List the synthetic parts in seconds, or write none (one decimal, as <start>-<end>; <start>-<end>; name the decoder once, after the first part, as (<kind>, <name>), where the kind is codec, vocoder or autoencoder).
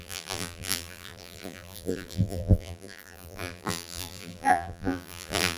0.0-5.6 (vocoder, BigVGAN v2)